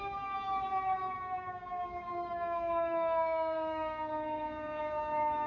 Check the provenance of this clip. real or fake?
fake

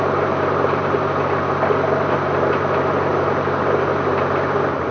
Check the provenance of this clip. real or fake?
real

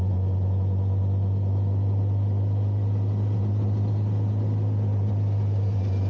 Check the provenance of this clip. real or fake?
real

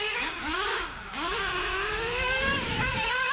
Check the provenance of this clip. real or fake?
fake